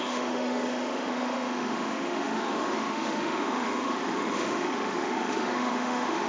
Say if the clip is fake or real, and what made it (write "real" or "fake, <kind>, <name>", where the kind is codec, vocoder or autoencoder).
fake, autoencoder, DAC-VAE